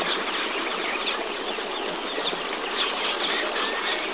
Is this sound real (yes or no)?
yes